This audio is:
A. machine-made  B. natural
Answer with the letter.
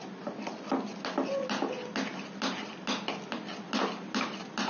B